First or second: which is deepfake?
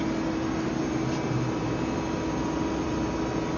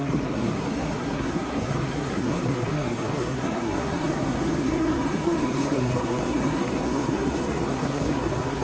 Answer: second